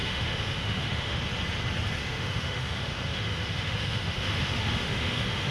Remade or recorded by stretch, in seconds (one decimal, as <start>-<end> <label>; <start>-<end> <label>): 0.0-1.2 remade; 1.2-2.0 recorded; 2.0-5.5 remade